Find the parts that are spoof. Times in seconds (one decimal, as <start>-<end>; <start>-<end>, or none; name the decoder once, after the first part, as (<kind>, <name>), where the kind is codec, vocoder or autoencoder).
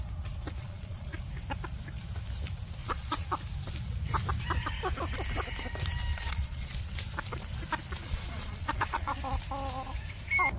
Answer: 0.6-1.2 (vocoder, Vocos); 2.8-3.3; 6.1-6.7; 8.0-9.1